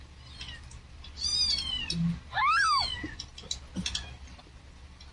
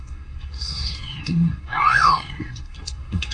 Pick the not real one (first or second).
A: second